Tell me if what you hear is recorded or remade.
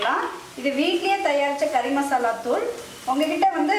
recorded